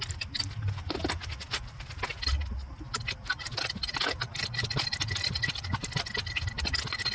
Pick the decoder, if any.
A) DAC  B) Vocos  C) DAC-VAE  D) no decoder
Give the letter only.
D